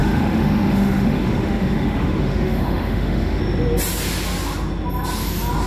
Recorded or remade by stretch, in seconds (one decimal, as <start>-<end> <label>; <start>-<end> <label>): 0.0-3.4 remade; 3.4-5.7 recorded